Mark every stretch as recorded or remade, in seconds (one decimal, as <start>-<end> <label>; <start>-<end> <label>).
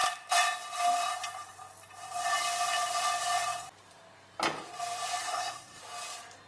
0.0-5.2 recorded; 5.2-5.8 remade; 5.8-6.5 recorded